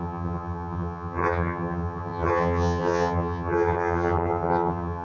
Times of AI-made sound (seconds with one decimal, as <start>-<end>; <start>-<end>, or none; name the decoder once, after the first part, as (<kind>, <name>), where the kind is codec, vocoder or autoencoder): 0.0-5.0 (vocoder, HiFi-GAN)